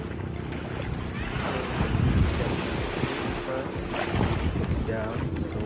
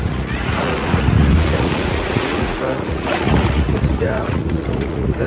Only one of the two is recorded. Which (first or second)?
first